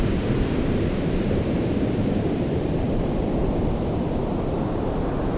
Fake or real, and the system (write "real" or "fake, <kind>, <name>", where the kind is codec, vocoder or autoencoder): real